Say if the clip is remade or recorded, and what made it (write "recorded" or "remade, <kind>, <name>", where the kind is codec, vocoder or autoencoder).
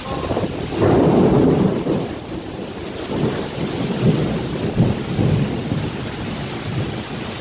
recorded